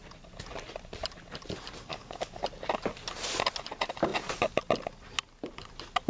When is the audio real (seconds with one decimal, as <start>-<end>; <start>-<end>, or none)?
0.0-1.9; 2.4-6.1